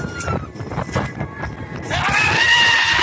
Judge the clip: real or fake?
real